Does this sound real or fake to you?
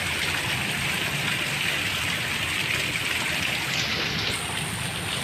real